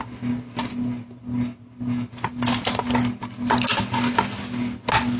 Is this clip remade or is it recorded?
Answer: recorded